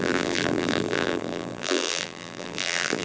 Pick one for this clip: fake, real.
fake